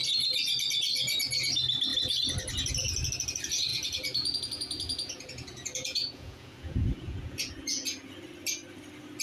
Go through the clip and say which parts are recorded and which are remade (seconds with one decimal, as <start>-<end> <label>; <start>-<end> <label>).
0.0-3.7 recorded; 3.7-8.1 remade; 8.1-9.2 recorded